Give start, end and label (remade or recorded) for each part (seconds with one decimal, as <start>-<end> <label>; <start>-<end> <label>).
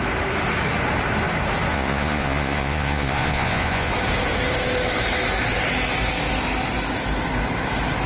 0.0-1.7 recorded; 1.7-3.9 remade; 3.9-8.1 recorded